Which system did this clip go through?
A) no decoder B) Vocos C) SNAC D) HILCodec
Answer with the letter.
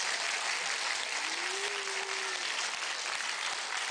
A